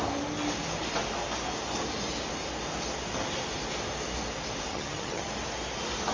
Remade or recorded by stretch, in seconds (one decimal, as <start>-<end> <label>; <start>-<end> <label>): 0.0-4.7 recorded; 4.7-5.3 remade; 5.3-6.1 recorded